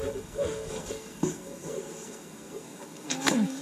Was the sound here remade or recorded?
remade